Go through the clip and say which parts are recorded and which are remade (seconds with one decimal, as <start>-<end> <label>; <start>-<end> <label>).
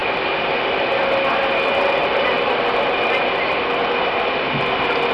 0.0-2.0 recorded; 2.0-4.1 remade; 4.1-5.1 recorded